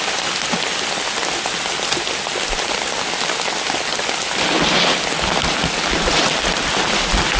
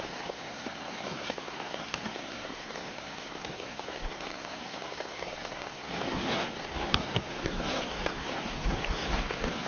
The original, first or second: first